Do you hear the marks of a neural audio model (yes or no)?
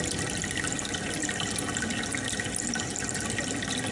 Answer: no